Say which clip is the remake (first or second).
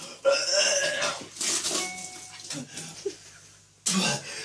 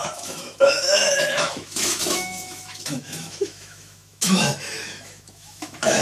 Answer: second